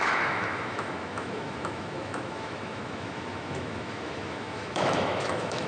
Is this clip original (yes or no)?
no